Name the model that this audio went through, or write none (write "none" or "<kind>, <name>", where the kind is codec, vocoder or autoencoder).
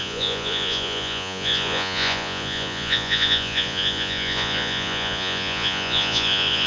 vocoder, Vocos